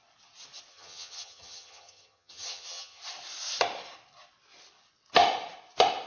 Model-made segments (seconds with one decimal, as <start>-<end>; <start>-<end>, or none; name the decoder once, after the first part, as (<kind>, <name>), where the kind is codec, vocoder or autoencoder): 0.7-3.0 (vocoder, HiFi-GAN)